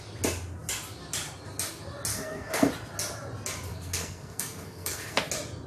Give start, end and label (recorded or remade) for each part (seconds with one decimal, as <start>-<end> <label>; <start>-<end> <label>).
0.0-2.1 recorded; 2.1-2.7 remade; 2.7-3.7 recorded; 3.7-5.2 remade; 5.2-5.7 recorded